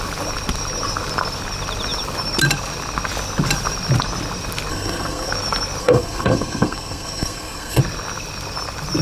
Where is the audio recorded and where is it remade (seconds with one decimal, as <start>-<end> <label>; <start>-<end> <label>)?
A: 0.0-4.7 recorded; 4.7-5.3 remade; 5.3-5.8 recorded; 5.8-7.8 remade; 7.8-9.0 recorded